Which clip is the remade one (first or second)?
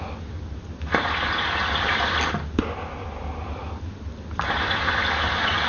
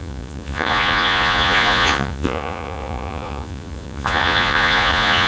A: second